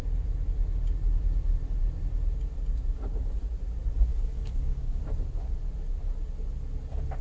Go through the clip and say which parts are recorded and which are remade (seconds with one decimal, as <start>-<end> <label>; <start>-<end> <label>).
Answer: 0.0-4.1 recorded; 4.1-5.0 remade; 5.0-7.2 recorded